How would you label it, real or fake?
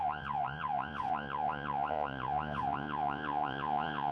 fake